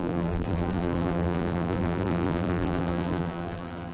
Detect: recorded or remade remade